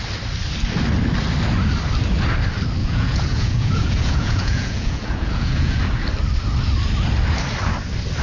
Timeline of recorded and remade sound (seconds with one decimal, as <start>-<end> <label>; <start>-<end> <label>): 0.0-2.8 recorded; 2.8-5.8 remade; 5.8-8.2 recorded